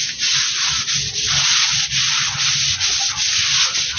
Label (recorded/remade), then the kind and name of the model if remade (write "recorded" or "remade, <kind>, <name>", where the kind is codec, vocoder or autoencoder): recorded